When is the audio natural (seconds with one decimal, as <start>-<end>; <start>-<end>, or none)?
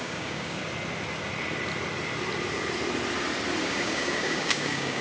0.6-3.6